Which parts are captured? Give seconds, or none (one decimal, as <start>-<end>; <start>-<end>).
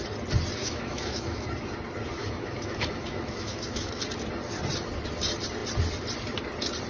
0.0-0.6; 1.5-2.2; 4.0-6.9